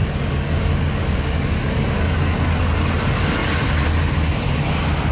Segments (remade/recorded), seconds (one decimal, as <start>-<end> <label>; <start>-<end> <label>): 0.0-2.9 remade; 2.9-5.1 recorded